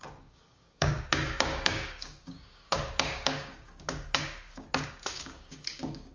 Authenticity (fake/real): fake